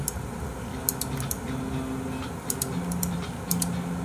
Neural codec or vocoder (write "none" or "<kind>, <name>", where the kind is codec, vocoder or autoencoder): none